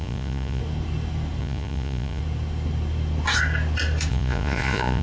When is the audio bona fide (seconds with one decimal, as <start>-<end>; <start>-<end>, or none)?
0.6-1.4; 2.2-4.1